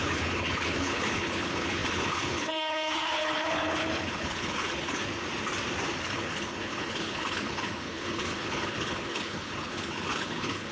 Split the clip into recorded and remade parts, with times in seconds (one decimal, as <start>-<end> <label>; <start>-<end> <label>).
0.0-5.0 remade; 5.0-6.0 recorded; 6.0-10.7 remade

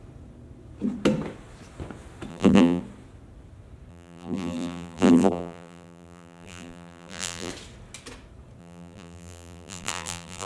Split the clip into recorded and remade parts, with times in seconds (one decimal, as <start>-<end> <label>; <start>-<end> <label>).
0.0-2.3 recorded; 2.3-2.8 remade; 2.8-3.9 recorded; 3.9-7.5 remade; 7.5-8.6 recorded; 8.6-10.5 remade